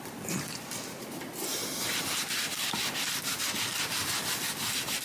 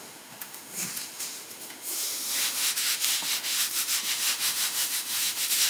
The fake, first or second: second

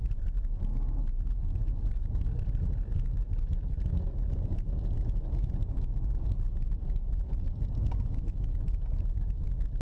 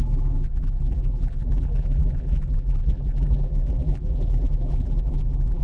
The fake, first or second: second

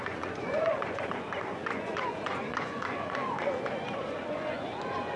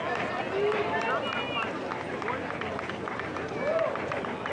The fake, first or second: first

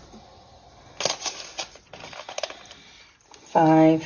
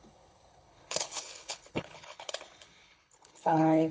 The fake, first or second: second